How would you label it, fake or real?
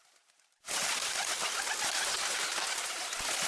real